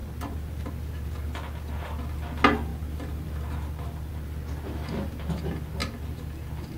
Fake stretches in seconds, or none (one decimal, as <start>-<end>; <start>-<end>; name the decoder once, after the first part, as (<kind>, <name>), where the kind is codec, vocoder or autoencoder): 0.0-0.7 (vocoder, BigVGAN v2); 2.7-4.1

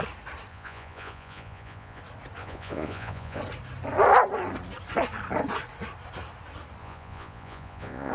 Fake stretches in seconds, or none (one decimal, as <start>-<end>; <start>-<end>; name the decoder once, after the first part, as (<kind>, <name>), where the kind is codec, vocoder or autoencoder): 0.5-2.0 (vocoder, Vocos); 2.4-3.4; 6.8-8.1